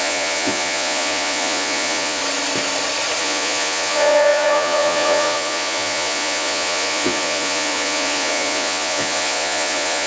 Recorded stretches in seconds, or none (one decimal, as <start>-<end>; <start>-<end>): 2.2-3.2